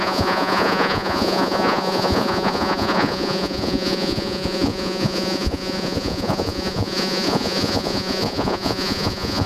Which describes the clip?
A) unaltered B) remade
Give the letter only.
B